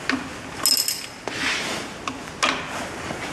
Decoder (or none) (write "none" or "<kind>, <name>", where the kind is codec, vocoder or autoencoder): none